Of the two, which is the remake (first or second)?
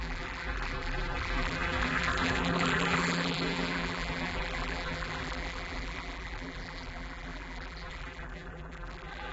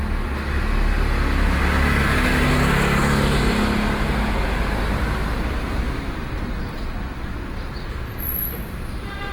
first